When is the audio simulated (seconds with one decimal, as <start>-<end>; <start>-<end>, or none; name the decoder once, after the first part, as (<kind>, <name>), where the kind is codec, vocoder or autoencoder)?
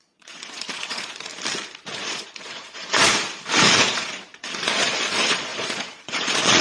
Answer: 0.0-1.3 (vocoder, Vocos); 1.8-3.1; 3.7-6.6